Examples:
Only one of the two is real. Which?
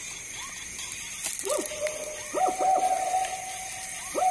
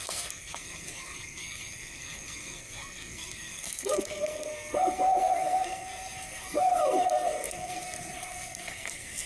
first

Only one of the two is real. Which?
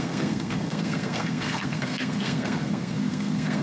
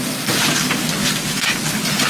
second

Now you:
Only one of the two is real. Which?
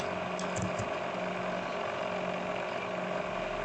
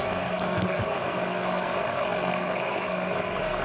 first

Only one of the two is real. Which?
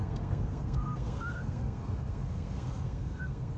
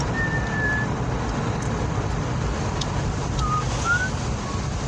second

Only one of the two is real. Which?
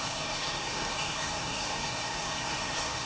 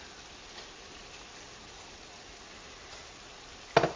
second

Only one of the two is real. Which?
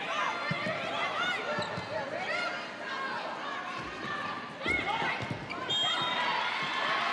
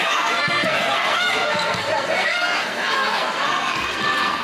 first